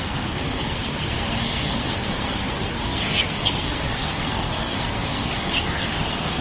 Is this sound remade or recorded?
remade